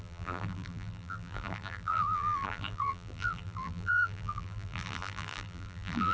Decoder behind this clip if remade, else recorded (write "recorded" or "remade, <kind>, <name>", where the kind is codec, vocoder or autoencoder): remade, vocoder, BigVGAN v2